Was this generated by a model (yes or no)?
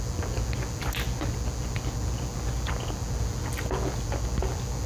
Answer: no